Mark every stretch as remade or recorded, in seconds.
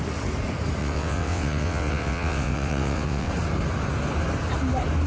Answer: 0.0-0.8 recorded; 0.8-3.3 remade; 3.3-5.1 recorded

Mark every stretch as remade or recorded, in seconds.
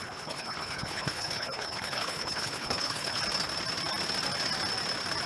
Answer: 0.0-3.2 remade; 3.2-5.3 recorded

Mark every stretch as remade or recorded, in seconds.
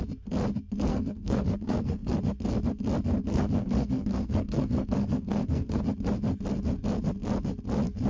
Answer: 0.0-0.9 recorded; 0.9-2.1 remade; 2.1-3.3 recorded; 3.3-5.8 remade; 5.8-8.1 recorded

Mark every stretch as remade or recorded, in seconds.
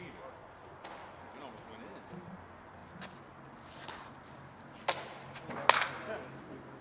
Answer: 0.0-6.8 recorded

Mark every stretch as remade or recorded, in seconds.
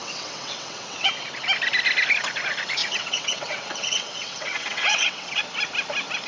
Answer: 0.0-1.1 remade; 1.1-2.8 recorded; 2.8-5.4 remade; 5.4-6.3 recorded